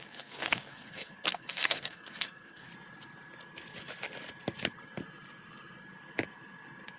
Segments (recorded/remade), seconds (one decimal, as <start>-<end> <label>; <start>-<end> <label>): 0.0-2.7 remade; 2.7-7.0 recorded